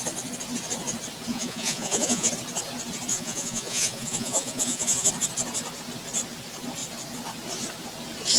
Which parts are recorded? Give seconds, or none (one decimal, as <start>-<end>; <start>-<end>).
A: 0.0-1.3; 2.3-3.1; 5.1-8.4